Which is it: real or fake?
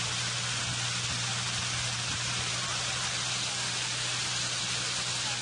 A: real